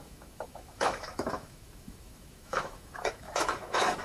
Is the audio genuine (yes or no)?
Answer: no